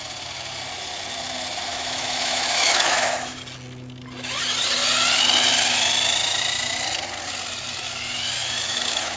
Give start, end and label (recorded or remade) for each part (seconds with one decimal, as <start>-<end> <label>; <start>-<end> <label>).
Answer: 0.0-1.7 recorded; 1.7-3.4 remade; 3.4-8.7 recorded; 8.7-9.2 remade